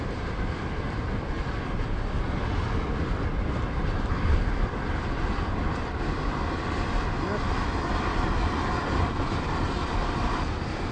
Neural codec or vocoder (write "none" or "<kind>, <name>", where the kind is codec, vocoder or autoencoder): none